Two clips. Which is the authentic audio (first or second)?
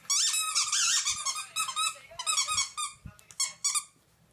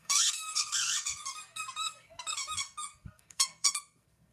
first